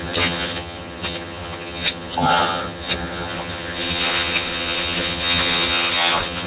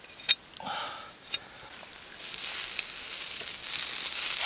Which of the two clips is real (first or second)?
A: second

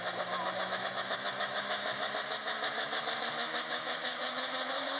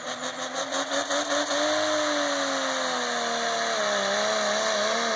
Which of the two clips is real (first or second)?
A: second